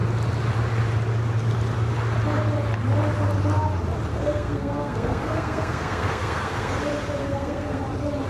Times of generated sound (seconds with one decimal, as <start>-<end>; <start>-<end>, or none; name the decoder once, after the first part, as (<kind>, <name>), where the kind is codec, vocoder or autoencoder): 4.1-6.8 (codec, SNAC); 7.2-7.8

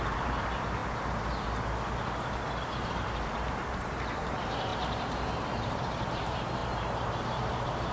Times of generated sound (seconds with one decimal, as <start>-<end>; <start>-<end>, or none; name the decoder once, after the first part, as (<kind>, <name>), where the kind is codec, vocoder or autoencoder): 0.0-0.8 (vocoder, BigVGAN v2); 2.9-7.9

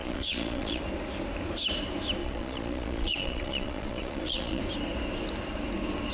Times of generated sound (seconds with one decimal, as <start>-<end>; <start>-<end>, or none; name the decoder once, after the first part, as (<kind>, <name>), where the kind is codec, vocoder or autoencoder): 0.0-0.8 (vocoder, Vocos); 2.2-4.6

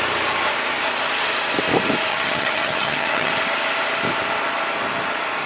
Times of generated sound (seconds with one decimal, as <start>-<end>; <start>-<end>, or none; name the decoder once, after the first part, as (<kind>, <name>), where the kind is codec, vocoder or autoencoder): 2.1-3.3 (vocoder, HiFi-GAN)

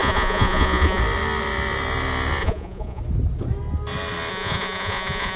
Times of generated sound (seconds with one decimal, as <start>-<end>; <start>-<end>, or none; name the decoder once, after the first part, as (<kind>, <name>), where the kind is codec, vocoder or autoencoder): 0.0-1.0 (vocoder, Vocos); 2.4-3.0; 4.3-5.4